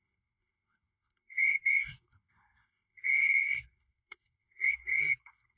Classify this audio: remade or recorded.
remade